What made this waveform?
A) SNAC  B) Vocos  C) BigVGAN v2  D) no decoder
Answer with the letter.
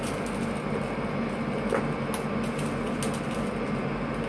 D